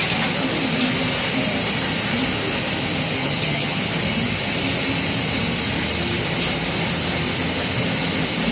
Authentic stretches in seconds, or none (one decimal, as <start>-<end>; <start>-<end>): 0.0-3.2; 3.8-8.5